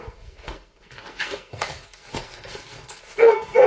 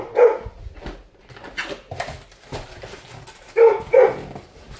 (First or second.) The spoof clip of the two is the first